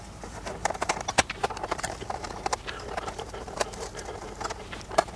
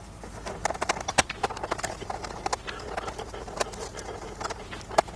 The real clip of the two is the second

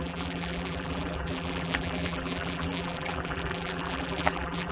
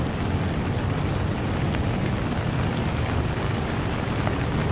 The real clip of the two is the second